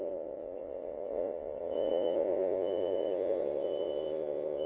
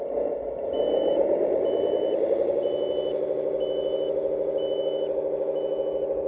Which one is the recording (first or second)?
second